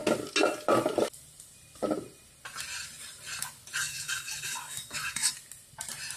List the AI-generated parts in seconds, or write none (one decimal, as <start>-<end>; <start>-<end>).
3.8-5.3